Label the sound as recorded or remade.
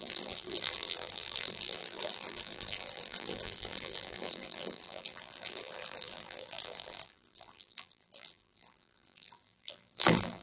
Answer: remade